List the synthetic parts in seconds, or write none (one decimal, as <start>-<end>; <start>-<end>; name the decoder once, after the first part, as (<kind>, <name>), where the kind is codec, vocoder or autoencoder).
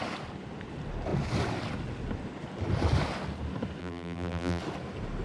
3.8-4.6 (vocoder, BigVGAN v2)